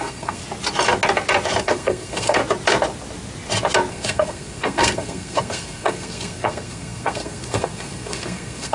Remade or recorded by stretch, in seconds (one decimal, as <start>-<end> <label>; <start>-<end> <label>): 0.0-0.4 remade; 0.4-1.6 recorded; 1.6-2.4 remade; 2.4-3.9 recorded; 3.9-8.7 remade